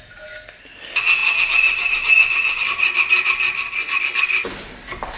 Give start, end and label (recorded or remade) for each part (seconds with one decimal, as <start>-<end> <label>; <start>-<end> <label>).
0.0-5.2 recorded